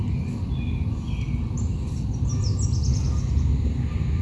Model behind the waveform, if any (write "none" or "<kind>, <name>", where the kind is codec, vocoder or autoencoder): none